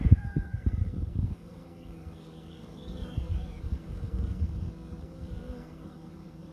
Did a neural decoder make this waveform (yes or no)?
yes